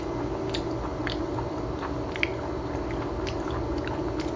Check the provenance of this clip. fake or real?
real